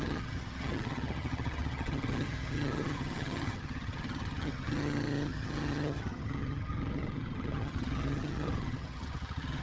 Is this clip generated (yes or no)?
yes